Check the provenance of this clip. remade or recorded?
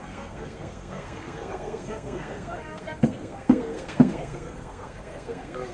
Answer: remade